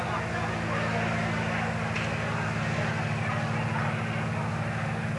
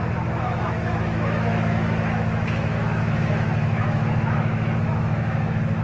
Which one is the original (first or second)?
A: first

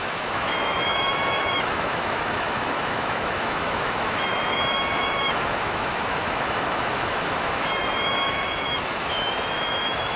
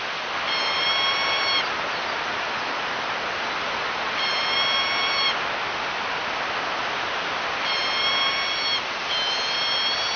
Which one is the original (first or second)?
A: second